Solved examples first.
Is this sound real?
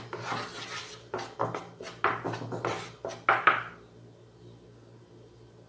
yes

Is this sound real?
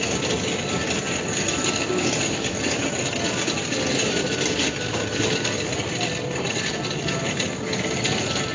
yes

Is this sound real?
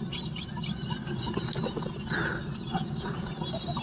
yes